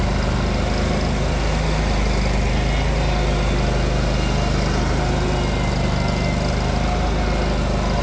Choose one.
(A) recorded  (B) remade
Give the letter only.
A